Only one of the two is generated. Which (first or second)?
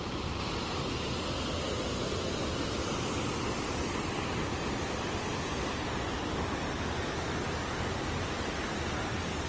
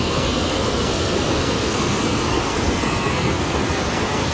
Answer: second